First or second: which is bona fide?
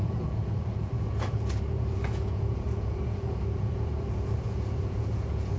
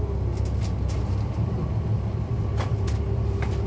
second